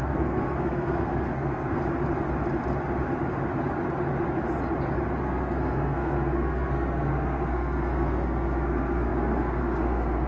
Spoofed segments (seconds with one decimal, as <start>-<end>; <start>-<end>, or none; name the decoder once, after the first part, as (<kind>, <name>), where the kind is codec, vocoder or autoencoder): 0.0-1.8 (codec, SNAC); 5.2-10.3